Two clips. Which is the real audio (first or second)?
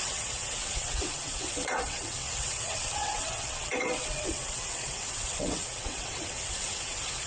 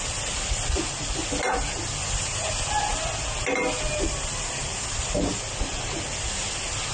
second